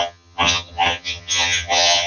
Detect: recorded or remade remade